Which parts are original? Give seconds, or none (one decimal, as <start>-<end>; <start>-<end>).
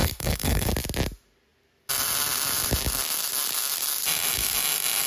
0.7-5.1